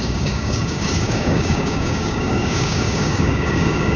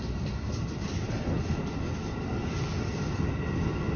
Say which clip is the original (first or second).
second